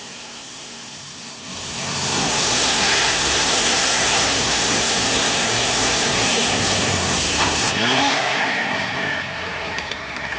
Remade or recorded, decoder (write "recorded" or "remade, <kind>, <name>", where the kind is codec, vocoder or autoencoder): remade, codec, SNAC